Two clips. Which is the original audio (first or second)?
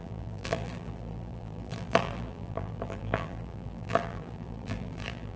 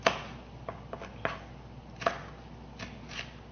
second